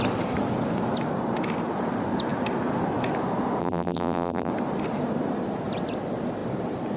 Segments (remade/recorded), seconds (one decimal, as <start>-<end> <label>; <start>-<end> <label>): 0.0-3.6 recorded; 3.6-4.5 remade; 4.5-7.0 recorded